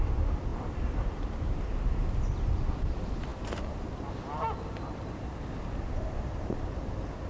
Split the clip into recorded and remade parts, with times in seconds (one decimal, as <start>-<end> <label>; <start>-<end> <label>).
0.0-7.3 recorded